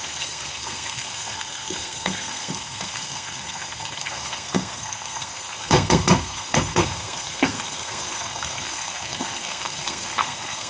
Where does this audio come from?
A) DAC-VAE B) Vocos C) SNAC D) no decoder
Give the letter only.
C